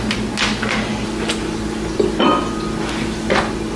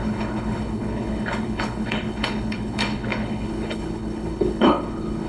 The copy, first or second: second